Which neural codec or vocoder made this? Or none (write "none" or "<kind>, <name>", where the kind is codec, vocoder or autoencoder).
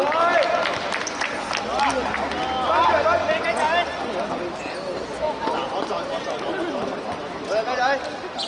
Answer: none